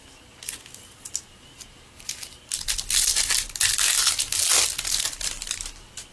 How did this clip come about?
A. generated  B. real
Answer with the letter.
B